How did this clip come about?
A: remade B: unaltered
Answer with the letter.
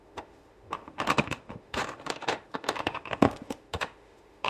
A